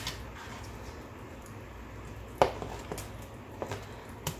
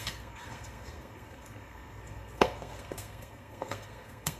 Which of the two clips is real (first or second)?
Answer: first